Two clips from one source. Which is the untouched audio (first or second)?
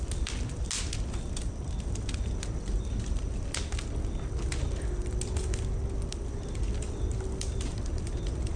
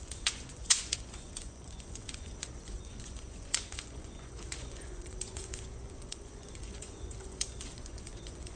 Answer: first